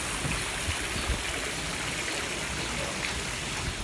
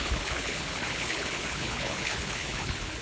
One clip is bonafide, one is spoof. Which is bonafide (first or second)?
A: first